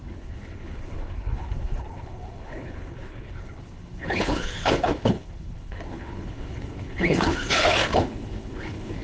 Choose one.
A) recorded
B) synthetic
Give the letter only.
B